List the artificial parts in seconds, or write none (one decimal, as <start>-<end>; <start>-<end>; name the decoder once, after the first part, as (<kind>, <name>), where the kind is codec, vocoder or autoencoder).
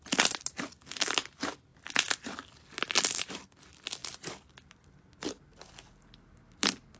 none